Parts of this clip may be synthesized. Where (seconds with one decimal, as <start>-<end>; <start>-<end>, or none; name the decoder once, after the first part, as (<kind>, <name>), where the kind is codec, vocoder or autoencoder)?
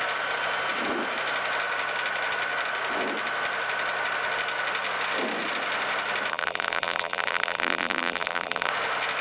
6.3-8.7 (vocoder, BigVGAN v2)